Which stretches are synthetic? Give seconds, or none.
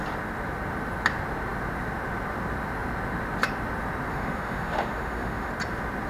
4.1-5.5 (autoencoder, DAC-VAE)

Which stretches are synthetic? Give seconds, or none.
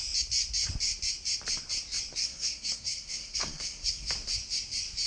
2.2-4.1 (codec, SNAC)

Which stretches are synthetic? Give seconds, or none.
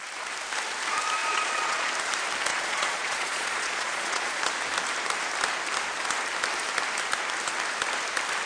1.2-1.9 (vocoder, Vocos); 2.5-4.4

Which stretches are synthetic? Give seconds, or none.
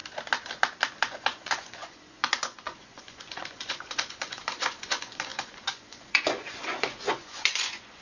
1.0-8.0 (vocoder, Vocos)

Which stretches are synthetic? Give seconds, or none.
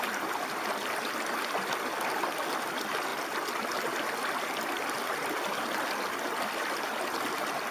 none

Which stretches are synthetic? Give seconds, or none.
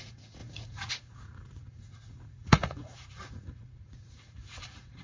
0.0-5.0 (vocoder, Vocos)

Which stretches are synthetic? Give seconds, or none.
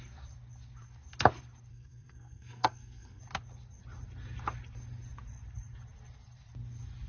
1.7-3.2 (codec, SNAC)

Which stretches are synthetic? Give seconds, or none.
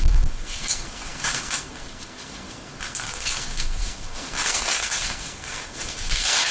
0.0-6.5 (codec, SNAC)